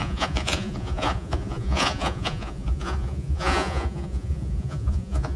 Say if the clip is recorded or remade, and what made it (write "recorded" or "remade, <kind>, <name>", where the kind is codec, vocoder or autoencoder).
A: remade, vocoder, Vocos